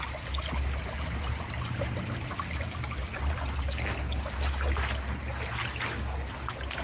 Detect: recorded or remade recorded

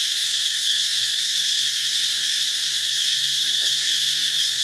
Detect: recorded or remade remade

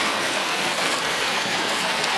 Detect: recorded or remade remade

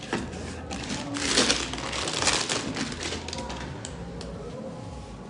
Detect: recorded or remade recorded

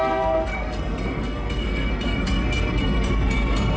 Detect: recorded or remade remade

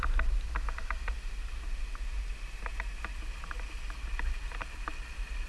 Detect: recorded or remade recorded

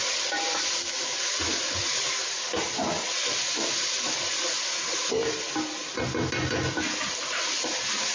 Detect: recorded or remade recorded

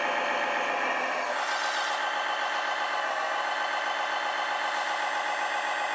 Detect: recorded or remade recorded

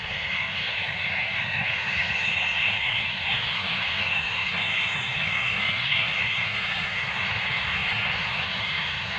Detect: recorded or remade remade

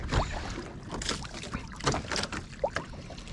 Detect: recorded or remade recorded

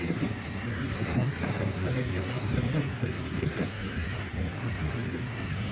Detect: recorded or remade remade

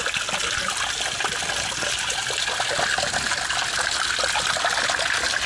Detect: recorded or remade recorded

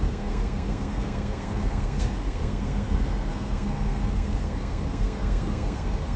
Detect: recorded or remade remade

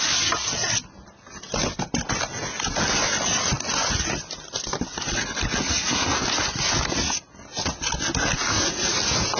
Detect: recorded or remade recorded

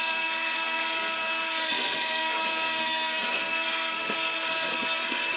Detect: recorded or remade remade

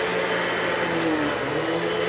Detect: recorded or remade recorded